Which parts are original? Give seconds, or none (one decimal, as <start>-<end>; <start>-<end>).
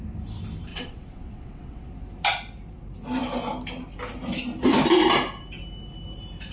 0.0-0.7; 1.9-6.5